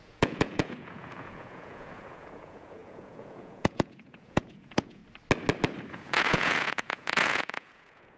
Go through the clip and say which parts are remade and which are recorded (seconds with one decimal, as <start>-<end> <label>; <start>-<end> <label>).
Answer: 0.0-5.0 remade; 5.0-5.9 recorded; 5.9-8.2 remade